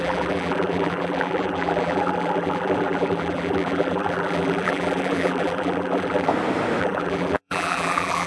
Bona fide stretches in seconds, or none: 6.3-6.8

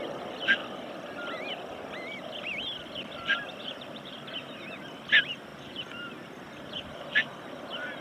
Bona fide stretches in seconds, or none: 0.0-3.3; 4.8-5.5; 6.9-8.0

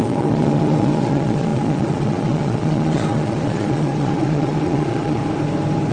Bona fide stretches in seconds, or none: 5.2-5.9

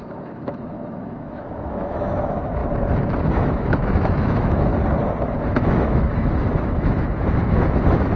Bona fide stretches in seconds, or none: 2.6-3.2; 4.7-5.2

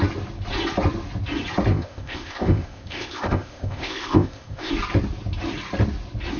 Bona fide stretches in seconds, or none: 0.0-1.7; 4.7-6.4

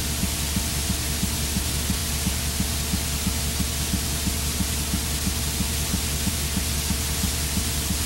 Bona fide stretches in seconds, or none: 0.0-8.1

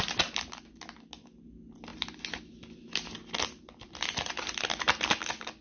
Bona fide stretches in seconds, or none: 0.0-5.6